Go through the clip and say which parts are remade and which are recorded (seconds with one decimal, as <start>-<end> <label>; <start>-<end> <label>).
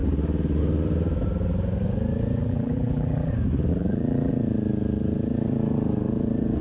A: 0.0-2.4 recorded; 2.4-3.3 remade; 3.3-3.7 recorded; 3.7-4.3 remade; 4.3-6.6 recorded